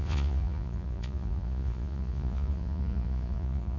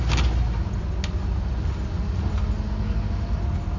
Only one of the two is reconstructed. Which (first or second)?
first